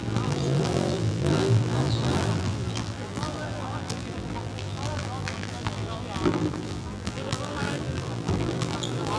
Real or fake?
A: fake